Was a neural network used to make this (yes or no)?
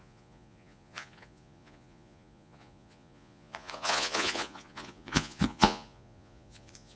yes